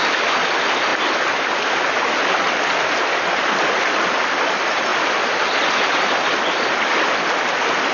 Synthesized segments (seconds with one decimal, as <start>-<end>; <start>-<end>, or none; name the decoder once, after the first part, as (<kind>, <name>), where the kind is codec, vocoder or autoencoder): none